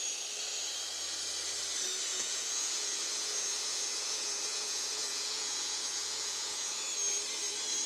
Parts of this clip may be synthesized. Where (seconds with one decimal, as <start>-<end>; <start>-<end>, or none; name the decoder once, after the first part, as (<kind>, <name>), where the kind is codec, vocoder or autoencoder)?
2.1-6.8 (vocoder, Vocos)